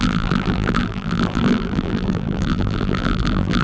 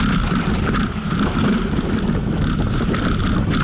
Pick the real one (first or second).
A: second